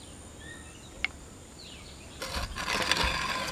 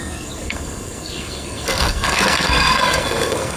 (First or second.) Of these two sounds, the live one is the first